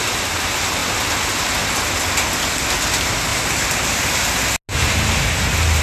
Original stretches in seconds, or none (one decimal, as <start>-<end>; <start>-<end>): 0.0-5.8